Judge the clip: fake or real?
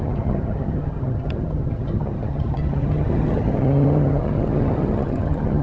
fake